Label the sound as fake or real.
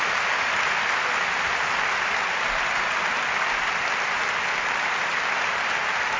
real